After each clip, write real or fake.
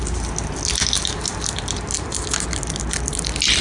real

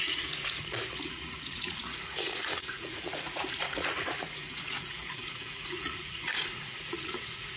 fake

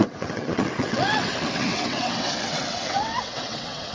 fake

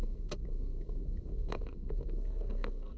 fake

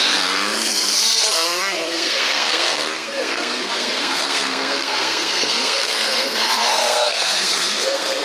fake